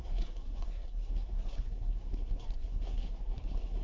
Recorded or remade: remade